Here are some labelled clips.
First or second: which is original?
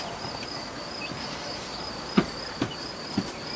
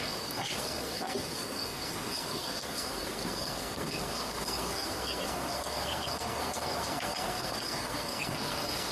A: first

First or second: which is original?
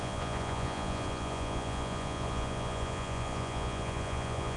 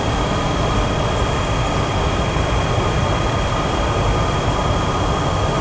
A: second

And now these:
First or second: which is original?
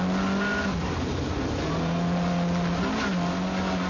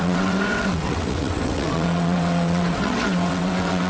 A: first